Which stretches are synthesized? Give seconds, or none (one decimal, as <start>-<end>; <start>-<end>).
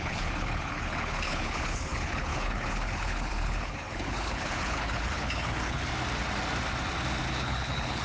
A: 0.0-5.9; 7.3-8.0